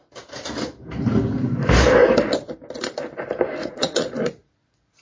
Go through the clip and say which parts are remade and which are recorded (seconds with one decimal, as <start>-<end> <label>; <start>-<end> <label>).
0.0-3.6 recorded; 3.6-4.1 remade; 4.1-5.0 recorded